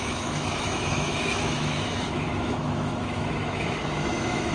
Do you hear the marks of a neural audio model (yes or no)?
yes